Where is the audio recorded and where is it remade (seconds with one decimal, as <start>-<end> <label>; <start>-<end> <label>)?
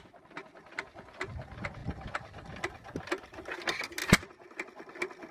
0.0-5.3 recorded